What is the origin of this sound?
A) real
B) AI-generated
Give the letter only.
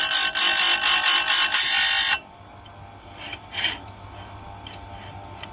A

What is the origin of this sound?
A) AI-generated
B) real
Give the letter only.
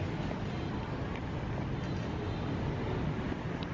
B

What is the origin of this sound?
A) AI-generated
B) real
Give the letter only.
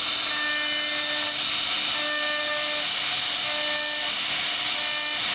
B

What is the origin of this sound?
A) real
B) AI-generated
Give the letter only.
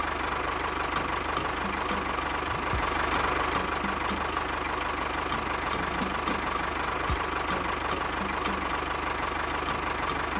A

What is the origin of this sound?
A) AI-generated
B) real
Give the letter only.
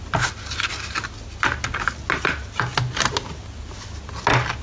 B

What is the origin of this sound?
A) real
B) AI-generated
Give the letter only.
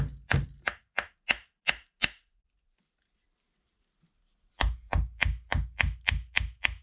A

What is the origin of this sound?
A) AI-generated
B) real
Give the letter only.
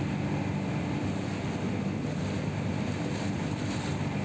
B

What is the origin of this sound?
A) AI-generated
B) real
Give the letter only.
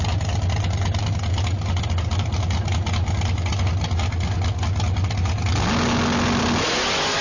B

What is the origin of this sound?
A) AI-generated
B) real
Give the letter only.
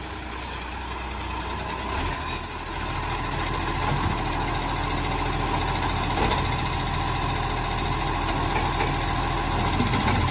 B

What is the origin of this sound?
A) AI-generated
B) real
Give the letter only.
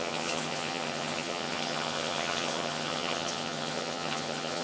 A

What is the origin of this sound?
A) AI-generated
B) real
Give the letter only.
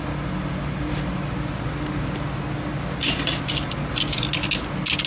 B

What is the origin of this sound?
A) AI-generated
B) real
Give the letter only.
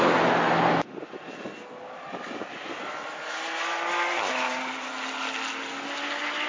B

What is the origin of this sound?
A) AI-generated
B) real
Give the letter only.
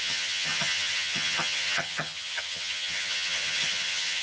A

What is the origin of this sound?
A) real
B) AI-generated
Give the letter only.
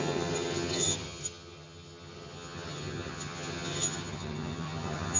B